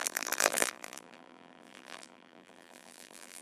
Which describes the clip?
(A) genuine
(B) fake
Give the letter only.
B